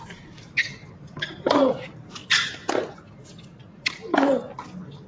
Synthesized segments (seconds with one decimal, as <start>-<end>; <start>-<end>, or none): 0.0-2.2; 3.8-4.4